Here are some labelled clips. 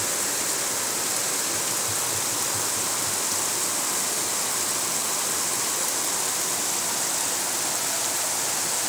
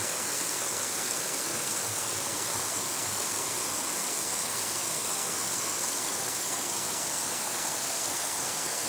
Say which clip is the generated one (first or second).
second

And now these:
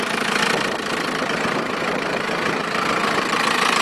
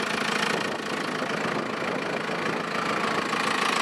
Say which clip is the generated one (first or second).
first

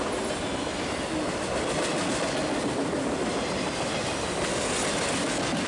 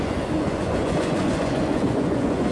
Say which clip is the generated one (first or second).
second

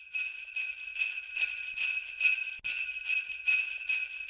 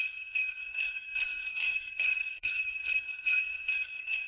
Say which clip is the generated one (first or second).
second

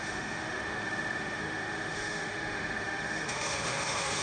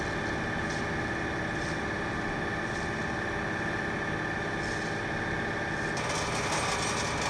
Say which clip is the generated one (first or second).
first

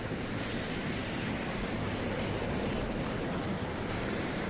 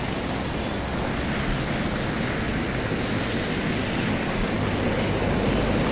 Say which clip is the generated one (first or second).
first